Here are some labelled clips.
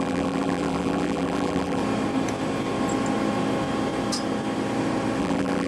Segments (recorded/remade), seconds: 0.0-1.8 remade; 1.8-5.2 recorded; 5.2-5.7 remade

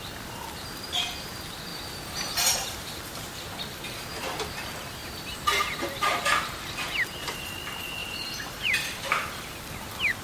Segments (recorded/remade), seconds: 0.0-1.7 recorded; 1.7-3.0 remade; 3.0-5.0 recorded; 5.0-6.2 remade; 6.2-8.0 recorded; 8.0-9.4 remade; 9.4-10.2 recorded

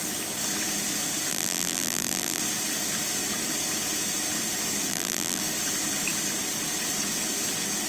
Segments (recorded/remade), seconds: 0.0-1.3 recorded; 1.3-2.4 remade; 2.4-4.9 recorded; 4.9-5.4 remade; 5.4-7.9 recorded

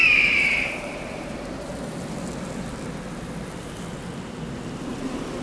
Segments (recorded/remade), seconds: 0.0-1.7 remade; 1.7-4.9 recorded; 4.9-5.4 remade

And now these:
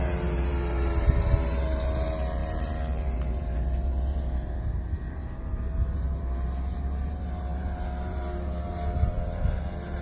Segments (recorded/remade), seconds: 0.0-10.0 remade

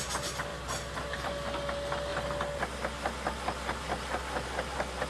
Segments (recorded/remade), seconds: 0.0-0.5 recorded; 0.5-1.3 remade; 1.3-5.1 recorded

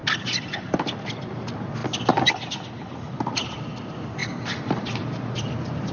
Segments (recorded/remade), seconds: 0.0-0.6 recorded; 0.6-1.8 remade; 1.8-3.1 recorded; 3.1-4.2 remade; 4.2-4.8 recorded; 4.8-5.9 remade

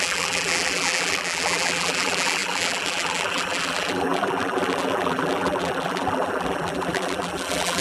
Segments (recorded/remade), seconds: 0.0-7.8 remade